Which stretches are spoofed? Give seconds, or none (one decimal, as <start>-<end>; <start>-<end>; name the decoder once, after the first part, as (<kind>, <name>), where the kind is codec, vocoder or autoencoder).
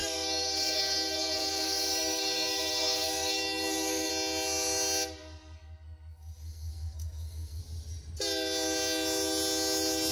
0.0-4.1 (codec, SNAC); 5.2-7.6